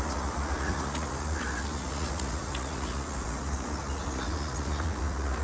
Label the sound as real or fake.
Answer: fake